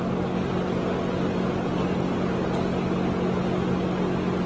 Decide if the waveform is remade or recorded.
recorded